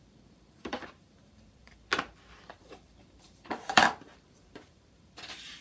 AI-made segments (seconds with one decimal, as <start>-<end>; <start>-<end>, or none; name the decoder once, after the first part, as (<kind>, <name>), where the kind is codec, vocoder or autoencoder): 0.0-1.9 (vocoder, BigVGAN v2); 2.5-5.6